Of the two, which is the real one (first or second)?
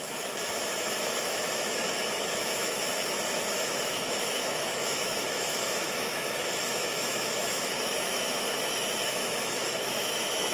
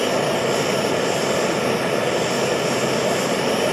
second